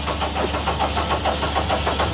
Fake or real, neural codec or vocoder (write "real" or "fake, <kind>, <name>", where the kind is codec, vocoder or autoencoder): real